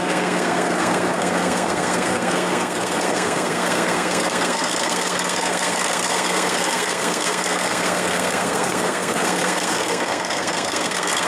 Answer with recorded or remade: remade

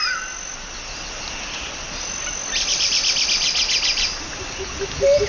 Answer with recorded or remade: recorded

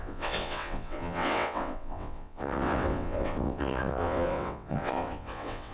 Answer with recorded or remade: remade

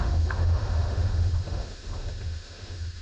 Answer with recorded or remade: remade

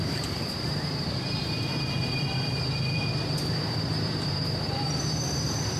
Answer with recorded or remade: remade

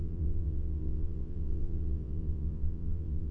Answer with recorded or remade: remade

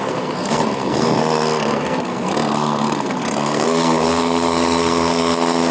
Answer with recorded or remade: remade